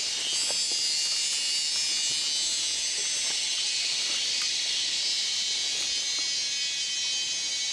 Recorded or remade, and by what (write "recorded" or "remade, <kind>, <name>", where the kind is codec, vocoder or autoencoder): recorded